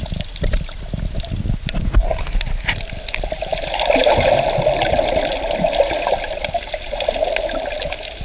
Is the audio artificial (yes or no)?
no